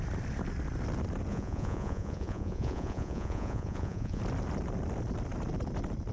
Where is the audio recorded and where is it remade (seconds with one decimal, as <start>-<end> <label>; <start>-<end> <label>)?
0.0-1.3 recorded; 1.3-4.2 remade; 4.2-6.1 recorded